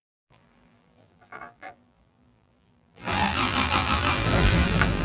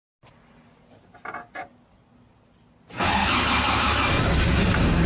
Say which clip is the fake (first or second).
first